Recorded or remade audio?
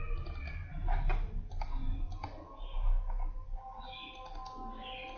recorded